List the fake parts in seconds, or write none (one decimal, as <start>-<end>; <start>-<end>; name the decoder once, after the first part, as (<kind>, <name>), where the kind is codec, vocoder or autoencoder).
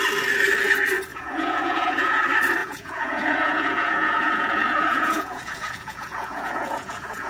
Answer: 1.1-2.2 (vocoder, Vocos); 2.6-7.3